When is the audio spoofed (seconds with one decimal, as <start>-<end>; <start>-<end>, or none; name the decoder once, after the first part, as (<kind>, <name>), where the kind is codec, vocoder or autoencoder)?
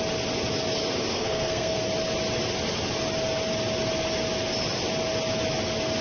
1.1-1.8 (codec, SNAC)